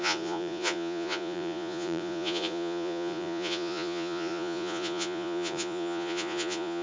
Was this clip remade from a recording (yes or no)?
yes